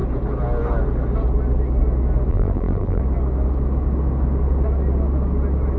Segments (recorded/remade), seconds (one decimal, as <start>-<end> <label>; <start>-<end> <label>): 0.0-2.3 recorded; 2.3-3.0 remade; 3.0-5.8 recorded